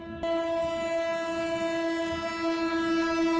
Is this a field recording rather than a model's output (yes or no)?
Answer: yes